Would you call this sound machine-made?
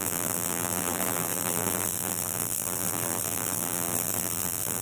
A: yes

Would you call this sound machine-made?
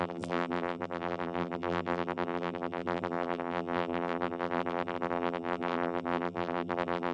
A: yes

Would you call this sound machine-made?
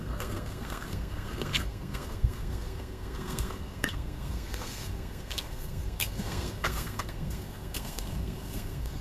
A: yes